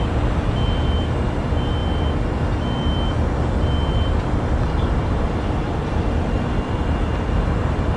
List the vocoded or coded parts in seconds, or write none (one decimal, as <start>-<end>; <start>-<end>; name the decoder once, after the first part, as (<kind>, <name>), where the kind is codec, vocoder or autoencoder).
none